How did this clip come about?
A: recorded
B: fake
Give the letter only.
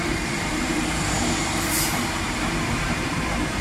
B